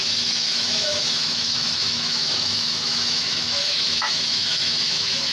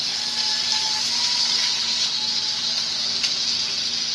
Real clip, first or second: second